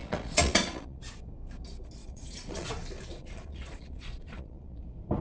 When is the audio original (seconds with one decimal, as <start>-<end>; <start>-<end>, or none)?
1.0-2.0; 2.7-3.1; 4.8-5.2